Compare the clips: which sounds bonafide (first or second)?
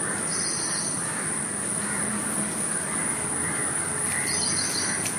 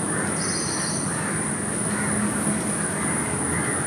second